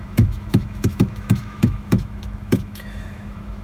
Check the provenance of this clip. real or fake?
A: fake